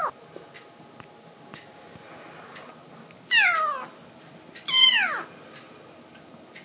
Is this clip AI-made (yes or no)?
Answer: no